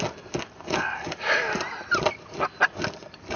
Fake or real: real